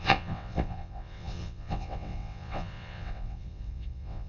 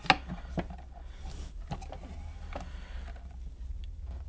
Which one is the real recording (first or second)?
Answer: second